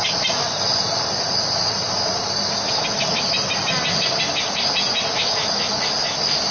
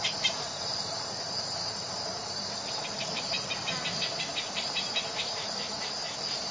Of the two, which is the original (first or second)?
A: first